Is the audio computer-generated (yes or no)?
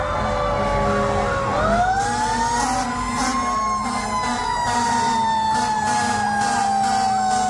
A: no